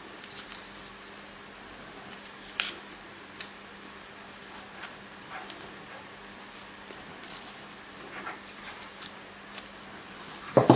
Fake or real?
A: fake